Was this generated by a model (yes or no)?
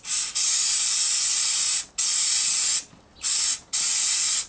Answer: no